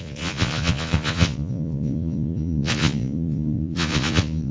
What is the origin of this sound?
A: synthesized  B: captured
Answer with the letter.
A